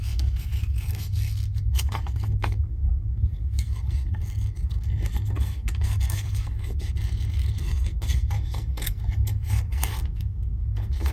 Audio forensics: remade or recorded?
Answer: remade